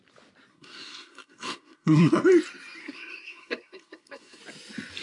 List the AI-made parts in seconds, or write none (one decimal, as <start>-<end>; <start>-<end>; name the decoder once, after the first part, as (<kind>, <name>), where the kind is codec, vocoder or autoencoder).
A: 0.5-2.1 (codec, SNAC); 2.8-4.4